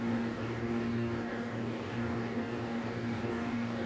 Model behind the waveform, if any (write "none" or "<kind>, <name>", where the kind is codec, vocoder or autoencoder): codec, DAC